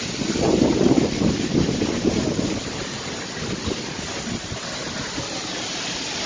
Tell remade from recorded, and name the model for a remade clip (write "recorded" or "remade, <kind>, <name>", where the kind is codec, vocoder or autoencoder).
recorded